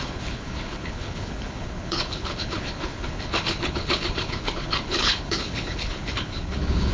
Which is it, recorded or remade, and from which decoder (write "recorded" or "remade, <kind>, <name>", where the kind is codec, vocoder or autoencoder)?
remade, codec, HILCodec